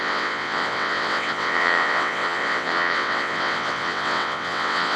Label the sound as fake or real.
fake